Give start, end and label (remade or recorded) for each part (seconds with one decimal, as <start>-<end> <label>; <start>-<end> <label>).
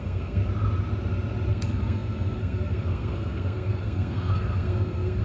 0.0-0.4 remade; 0.4-1.5 recorded; 1.5-5.2 remade